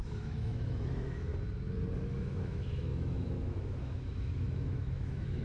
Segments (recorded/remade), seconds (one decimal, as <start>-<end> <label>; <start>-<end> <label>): 0.0-1.3 remade; 1.3-2.1 recorded; 2.1-5.4 remade